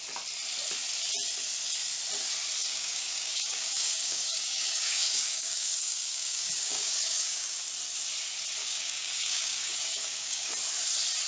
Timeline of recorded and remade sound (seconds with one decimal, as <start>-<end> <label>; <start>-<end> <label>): 0.0-2.6 recorded; 2.6-7.6 remade; 7.6-8.6 recorded; 8.6-10.5 remade; 10.5-11.3 recorded